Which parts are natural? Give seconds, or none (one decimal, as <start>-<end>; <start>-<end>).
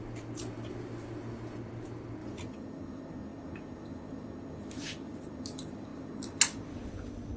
0.0-2.2; 2.8-7.4